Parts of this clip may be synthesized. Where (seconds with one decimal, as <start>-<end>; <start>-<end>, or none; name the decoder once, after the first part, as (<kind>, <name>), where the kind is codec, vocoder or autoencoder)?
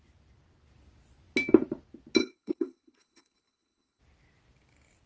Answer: 2.2-4.0 (codec, HILCodec)